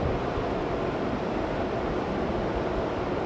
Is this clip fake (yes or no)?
no